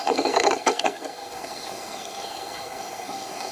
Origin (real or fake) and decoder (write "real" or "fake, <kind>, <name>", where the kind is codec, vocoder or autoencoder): fake, codec, SNAC